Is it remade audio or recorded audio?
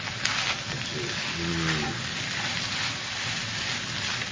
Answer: recorded